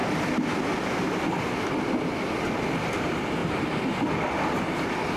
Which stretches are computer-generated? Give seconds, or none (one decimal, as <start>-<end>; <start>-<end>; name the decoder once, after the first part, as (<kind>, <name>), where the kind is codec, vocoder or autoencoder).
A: 3.4-4.7 (vocoder, BigVGAN v2)